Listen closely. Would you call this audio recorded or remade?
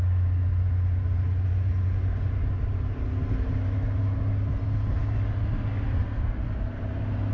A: recorded